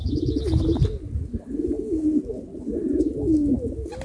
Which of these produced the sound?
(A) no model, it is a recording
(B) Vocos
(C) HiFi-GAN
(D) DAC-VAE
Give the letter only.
A